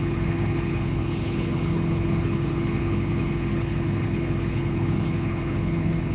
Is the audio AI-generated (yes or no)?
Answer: yes